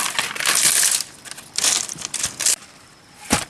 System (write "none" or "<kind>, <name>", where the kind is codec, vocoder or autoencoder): none